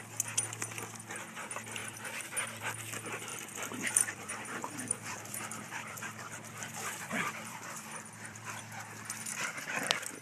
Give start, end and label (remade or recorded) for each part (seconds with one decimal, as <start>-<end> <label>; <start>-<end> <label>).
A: 0.0-1.8 recorded; 1.8-2.6 remade; 2.6-3.3 recorded; 3.3-8.6 remade; 8.6-10.2 recorded